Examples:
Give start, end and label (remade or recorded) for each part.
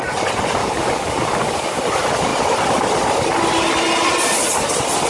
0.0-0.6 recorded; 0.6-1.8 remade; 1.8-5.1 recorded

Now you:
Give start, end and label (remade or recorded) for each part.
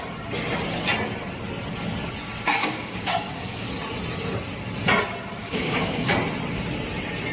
0.0-2.6 recorded; 2.6-3.7 remade; 3.7-5.4 recorded; 5.4-6.1 remade; 6.1-7.3 recorded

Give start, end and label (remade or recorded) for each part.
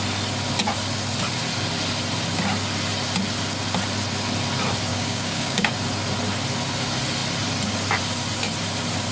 0.0-4.9 recorded; 4.9-5.7 remade; 5.7-9.1 recorded